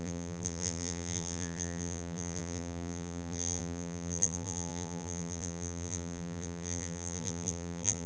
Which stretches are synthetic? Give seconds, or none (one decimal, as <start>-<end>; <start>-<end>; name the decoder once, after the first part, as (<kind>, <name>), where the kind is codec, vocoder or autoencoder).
0.0-8.1 (vocoder, BigVGAN v2)